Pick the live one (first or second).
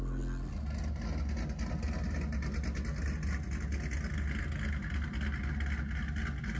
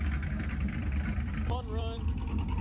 first